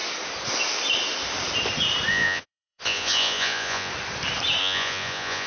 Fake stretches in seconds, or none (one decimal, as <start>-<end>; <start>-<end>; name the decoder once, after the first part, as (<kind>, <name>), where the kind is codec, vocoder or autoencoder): 2.1-3.9 (vocoder, Vocos); 4.6-5.5